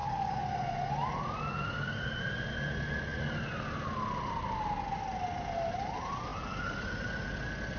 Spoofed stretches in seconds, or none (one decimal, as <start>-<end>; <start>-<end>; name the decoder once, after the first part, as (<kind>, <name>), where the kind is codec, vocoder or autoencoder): none